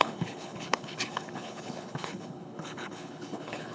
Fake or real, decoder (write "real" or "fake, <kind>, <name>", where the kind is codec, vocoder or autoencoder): fake, codec, HILCodec